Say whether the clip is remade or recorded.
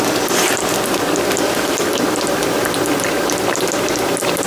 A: remade